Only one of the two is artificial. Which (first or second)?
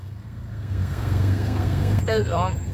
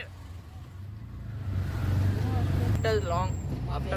first